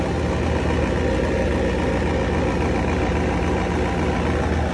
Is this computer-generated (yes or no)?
no